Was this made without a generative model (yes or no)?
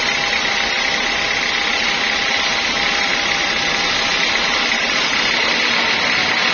yes